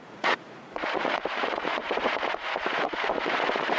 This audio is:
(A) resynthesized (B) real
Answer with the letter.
A